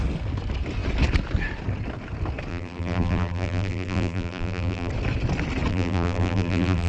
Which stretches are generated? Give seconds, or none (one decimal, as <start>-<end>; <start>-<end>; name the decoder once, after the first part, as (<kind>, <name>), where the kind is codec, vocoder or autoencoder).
2.5-4.9 (vocoder, BigVGAN v2); 5.7-6.9